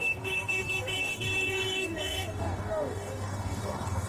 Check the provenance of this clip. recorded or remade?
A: remade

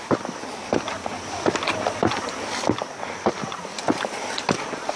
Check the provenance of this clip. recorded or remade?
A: recorded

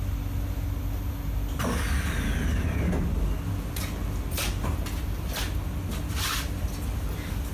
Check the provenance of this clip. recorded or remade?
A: recorded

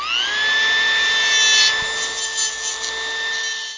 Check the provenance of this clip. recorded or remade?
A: recorded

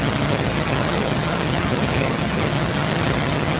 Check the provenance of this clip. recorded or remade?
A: remade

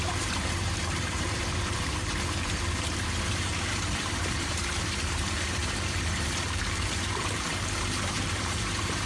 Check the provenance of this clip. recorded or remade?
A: remade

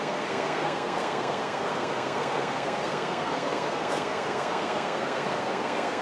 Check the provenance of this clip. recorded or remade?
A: remade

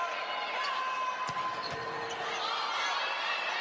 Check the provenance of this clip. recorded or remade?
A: recorded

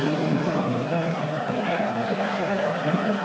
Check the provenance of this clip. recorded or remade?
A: remade